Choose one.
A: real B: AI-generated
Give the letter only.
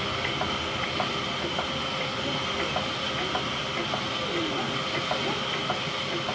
A